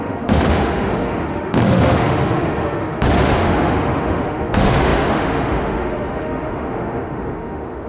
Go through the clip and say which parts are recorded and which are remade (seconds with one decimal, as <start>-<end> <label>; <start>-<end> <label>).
0.0-7.9 remade